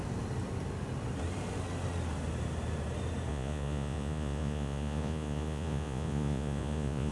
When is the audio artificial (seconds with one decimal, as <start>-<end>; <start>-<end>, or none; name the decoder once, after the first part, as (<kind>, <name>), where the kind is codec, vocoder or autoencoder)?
3.3-7.1 (vocoder, Vocos)